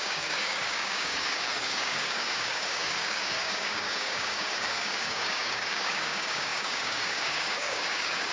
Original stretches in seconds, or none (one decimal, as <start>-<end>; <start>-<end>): none